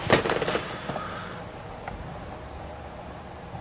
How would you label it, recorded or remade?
remade